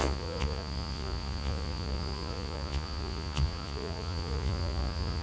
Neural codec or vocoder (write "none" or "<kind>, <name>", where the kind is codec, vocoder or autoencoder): vocoder, Vocos